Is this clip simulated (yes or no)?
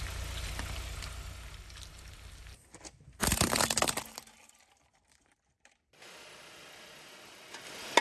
no